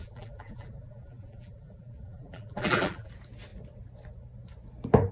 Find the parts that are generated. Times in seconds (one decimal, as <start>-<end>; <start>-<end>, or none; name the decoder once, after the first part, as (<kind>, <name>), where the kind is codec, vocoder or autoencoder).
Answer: 0.0-3.1 (vocoder, BigVGAN v2)